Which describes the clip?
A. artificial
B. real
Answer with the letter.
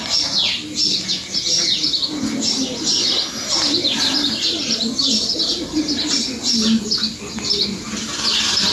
B